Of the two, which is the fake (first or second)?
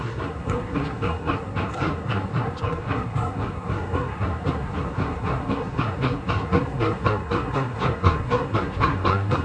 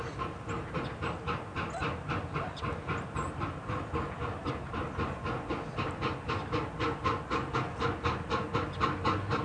first